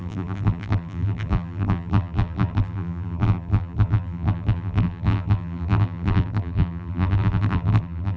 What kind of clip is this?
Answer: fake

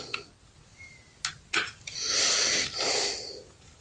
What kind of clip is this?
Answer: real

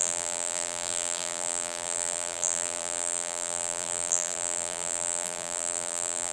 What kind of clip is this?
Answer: fake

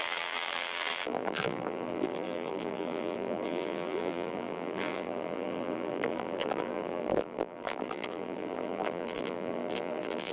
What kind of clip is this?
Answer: fake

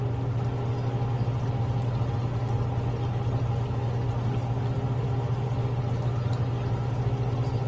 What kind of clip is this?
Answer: real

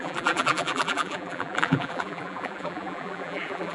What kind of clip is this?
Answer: fake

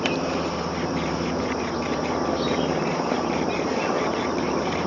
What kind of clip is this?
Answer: fake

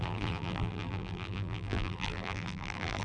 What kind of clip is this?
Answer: fake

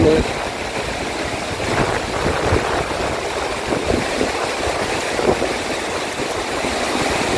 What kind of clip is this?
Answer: real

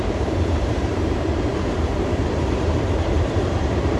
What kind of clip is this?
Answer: fake